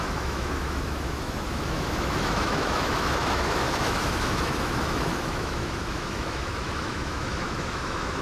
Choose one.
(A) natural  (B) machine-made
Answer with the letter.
B